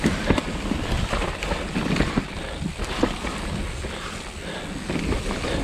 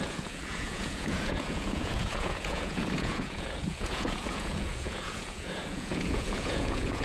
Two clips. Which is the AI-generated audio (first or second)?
second